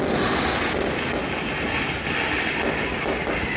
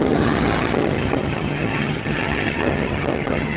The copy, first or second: second